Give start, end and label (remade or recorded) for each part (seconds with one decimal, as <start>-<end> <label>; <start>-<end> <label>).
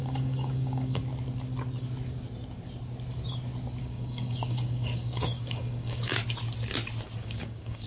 0.0-1.0 remade; 1.0-3.8 recorded; 3.8-6.2 remade; 6.2-7.2 recorded; 7.2-7.9 remade